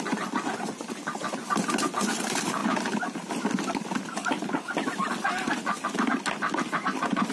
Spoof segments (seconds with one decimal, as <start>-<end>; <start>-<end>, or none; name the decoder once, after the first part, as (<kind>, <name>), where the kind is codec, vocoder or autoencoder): none

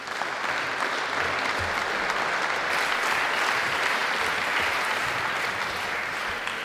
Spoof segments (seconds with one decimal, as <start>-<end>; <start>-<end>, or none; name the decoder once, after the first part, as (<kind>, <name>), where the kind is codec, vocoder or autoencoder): none

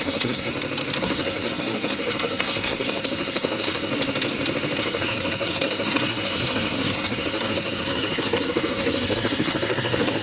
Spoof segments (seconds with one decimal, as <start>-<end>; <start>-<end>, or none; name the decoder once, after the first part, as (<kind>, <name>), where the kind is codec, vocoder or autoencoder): 0.0-0.5 (codec, SNAC); 1.0-3.9; 4.8-10.2